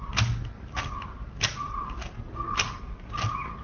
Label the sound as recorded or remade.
recorded